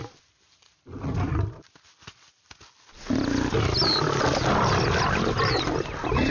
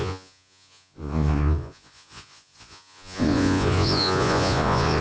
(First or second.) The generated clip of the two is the second